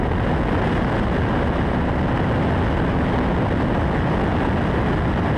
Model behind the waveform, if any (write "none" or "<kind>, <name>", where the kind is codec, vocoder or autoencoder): none